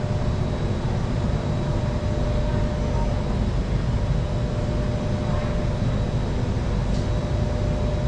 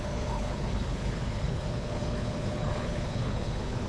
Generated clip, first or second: second